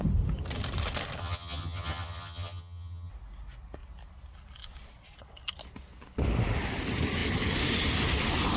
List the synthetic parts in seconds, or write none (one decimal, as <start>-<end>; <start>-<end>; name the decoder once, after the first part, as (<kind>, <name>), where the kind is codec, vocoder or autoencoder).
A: 1.2-3.1 (vocoder, HiFi-GAN)